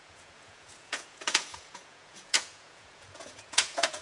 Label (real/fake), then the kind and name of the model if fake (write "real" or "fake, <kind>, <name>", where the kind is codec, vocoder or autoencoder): fake, vocoder, Vocos